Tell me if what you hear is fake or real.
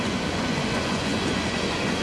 fake